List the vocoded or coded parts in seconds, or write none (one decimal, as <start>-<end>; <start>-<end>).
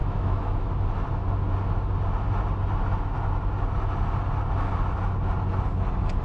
0.0-0.7